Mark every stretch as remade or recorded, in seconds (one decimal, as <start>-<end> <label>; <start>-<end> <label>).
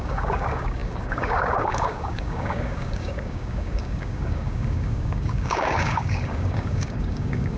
0.0-7.6 remade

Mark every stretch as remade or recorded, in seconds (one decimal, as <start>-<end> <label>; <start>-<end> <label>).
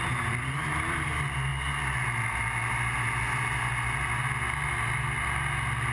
0.0-5.9 recorded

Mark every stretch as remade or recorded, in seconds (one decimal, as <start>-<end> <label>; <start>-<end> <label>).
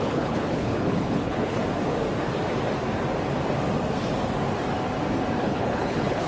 0.0-1.6 remade; 1.6-5.4 recorded; 5.4-6.3 remade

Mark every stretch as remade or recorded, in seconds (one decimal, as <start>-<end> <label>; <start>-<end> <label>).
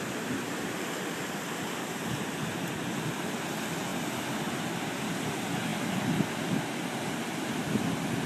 0.0-8.3 recorded